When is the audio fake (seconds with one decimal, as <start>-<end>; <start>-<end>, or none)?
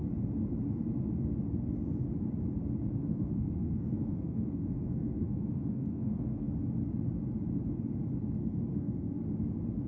3.1-6.5; 8.4-9.2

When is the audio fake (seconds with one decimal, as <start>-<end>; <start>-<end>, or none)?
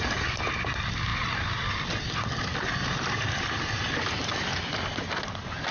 none